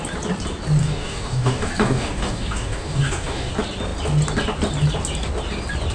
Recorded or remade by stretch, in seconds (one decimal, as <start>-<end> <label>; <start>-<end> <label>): 0.0-0.8 recorded; 0.8-3.5 remade; 3.5-5.9 recorded